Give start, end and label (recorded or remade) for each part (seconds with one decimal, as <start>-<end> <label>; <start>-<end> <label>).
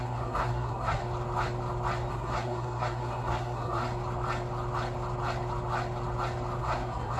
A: 0.0-1.0 remade; 1.0-2.1 recorded; 2.1-3.8 remade; 3.8-6.6 recorded; 6.6-7.2 remade